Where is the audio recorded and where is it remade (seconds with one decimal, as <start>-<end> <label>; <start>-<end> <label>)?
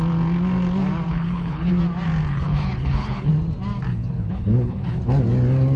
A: 0.0-1.1 recorded; 1.1-1.7 remade; 1.7-2.3 recorded; 2.3-3.3 remade; 3.3-3.9 recorded; 3.9-5.0 remade; 5.0-5.8 recorded